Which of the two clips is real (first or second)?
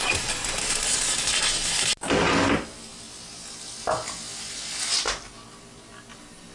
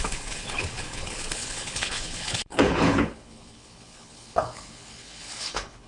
first